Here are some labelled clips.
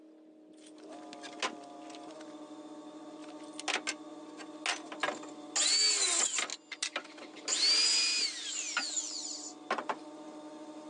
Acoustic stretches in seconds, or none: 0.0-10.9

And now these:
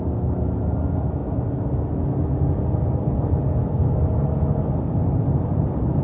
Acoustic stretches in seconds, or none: 0.0-6.0

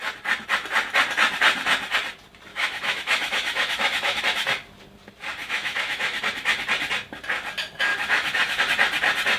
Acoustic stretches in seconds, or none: 0.0-2.5; 4.2-5.4; 6.2-7.9; 8.6-9.4

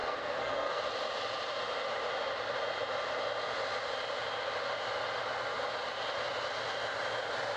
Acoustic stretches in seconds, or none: 0.8-7.6

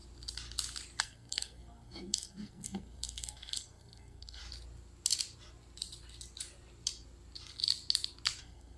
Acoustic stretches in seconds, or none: 0.0-1.0; 4.4-8.4

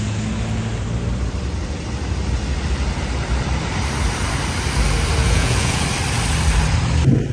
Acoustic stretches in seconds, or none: 0.0-5.2; 5.8-7.3

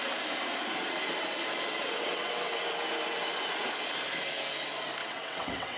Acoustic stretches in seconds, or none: 0.0-1.7; 2.5-5.0

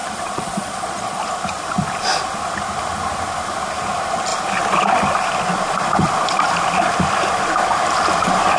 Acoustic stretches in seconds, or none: 1.2-8.6